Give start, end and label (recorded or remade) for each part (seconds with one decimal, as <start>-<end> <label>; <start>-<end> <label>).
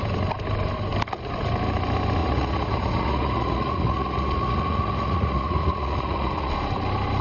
0.0-2.2 recorded; 2.2-6.5 remade; 6.5-7.2 recorded